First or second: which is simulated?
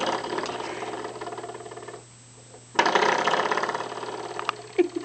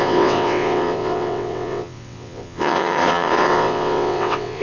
second